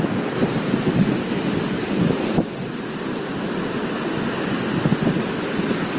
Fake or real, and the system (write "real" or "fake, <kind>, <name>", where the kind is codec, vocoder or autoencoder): real